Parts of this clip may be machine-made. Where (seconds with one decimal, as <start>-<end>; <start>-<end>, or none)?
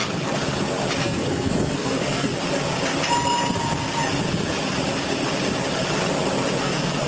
1.0-2.3; 6.6-7.1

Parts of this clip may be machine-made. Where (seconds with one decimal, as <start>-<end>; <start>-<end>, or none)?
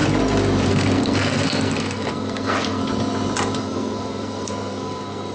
0.7-2.8; 3.6-5.3